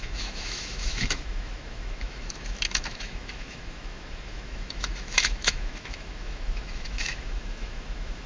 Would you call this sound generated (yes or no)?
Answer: yes